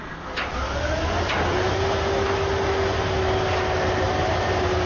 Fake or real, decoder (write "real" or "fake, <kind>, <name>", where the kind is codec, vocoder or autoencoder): real